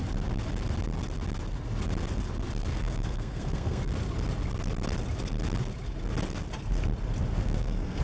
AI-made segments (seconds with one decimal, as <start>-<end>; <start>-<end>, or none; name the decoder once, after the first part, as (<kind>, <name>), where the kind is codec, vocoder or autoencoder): 2.7-3.9 (codec, SNAC); 7.4-8.0